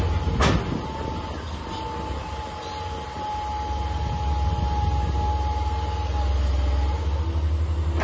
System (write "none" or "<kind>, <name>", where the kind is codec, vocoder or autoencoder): none